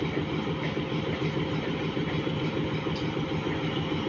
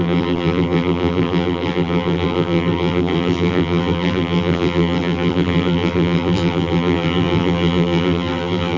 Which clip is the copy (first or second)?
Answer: second